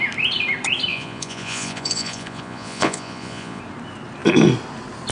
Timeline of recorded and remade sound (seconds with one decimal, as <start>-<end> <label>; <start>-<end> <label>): 0.0-0.9 recorded; 0.9-3.6 remade; 3.6-5.1 recorded